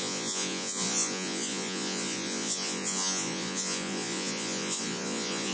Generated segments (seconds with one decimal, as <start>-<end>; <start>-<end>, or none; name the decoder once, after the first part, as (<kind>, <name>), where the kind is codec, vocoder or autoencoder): 0.0-5.5 (vocoder, Vocos)